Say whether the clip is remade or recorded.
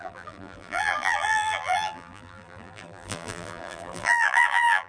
remade